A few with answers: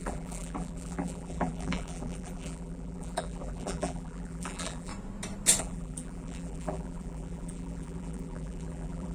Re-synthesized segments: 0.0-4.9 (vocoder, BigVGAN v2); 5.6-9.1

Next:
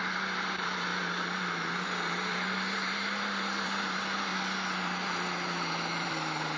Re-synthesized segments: 0.0-4.3 (vocoder, BigVGAN v2); 4.8-6.6

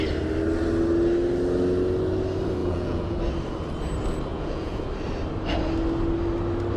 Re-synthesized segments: 2.6-3.2 (vocoder, Vocos); 4.3-4.8

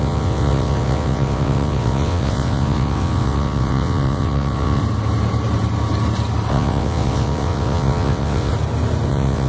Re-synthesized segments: 0.0-4.8 (vocoder, WaveNeXt); 6.5-8.5; 9.1-9.5

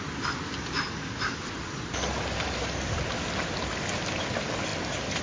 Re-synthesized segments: none

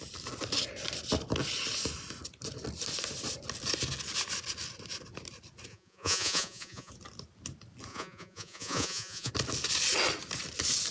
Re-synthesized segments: 5.7-6.9 (vocoder, Vocos); 7.9-9.3

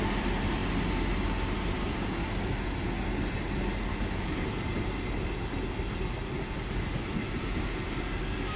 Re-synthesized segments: 3.9-4.4 (autoencoder, DAC-VAE)